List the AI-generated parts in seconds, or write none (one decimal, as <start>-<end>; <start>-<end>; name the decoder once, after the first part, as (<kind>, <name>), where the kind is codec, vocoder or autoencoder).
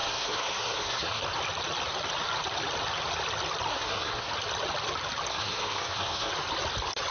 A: 0.0-1.2 (codec, SNAC); 3.7-4.3; 5.3-6.3